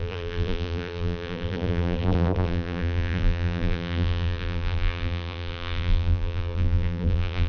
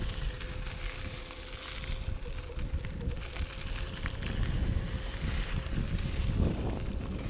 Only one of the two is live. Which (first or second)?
second